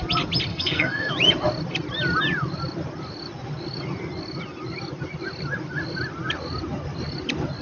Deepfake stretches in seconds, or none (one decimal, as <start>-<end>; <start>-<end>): 0.5-1.1